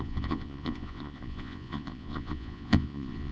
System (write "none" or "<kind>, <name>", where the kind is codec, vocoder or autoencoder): vocoder, Vocos